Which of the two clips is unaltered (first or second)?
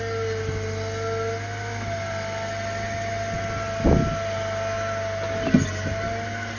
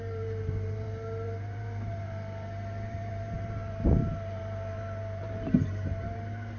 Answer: first